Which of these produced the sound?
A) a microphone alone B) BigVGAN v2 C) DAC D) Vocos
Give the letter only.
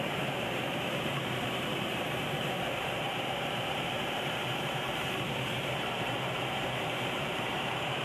B